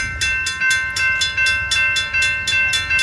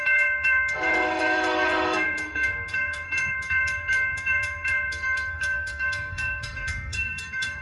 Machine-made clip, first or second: second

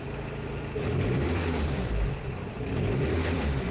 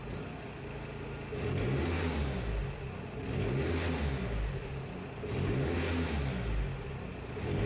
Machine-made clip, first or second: first